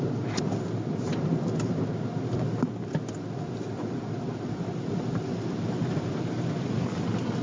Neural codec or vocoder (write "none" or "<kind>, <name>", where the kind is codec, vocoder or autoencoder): none